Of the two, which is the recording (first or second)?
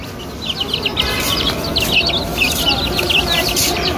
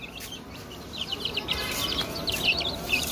first